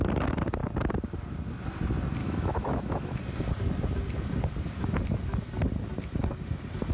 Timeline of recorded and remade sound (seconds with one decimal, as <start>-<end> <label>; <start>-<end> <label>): 0.0-2.2 recorded; 2.2-3.2 remade; 3.2-6.9 recorded